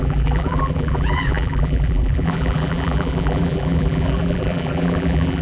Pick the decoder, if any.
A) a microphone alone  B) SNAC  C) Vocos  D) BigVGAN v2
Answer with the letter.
D